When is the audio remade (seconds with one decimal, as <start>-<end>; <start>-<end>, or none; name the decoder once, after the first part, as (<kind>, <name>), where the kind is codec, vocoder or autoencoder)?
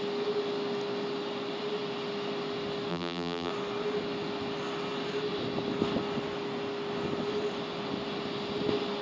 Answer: 2.9-3.5 (vocoder, BigVGAN v2)